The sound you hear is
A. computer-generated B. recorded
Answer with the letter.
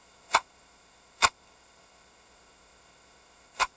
A